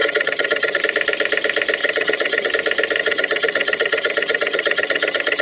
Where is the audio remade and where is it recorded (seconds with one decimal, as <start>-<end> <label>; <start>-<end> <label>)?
0.0-0.8 remade; 0.8-1.8 recorded; 1.8-2.5 remade; 2.5-3.0 recorded; 3.0-5.4 remade